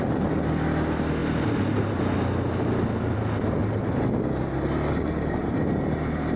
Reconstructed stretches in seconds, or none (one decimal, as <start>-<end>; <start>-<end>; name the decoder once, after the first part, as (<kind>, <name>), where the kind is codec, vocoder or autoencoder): 1.2-2.0 (vocoder, BigVGAN v2); 5.4-6.4